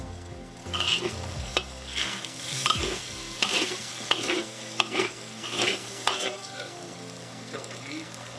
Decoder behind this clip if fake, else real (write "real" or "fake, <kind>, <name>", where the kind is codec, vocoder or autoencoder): fake, codec, SNAC